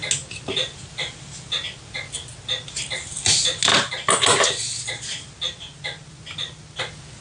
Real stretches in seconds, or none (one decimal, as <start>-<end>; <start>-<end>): 0.0-7.2